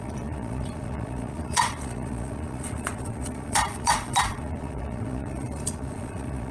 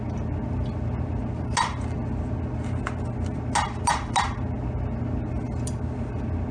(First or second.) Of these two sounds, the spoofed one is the first